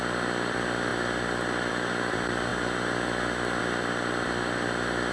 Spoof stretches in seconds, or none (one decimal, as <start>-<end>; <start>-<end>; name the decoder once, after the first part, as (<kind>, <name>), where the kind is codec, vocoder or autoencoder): none